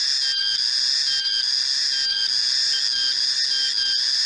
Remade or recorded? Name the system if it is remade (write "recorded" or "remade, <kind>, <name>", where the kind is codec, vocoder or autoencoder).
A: recorded